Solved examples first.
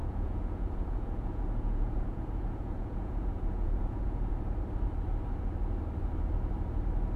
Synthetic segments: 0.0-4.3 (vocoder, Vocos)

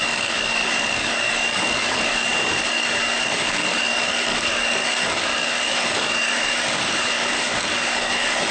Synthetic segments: 0.0-8.5 (codec, DAC)

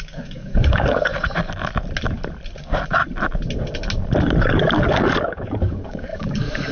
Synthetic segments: 0.0-1.1 (codec, DAC); 2.6-3.0; 4.4-6.7

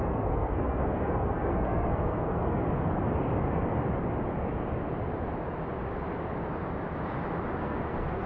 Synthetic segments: 0.0-2.6 (codec, SNAC); 7.6-8.3

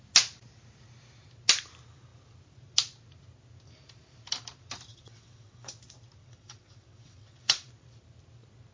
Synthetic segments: 4.9-5.7 (vocoder, WaveNeXt); 6.2-7.7

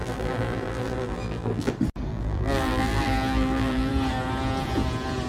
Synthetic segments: 0.0-1.7 (vocoder, BigVGAN v2); 2.1-3.9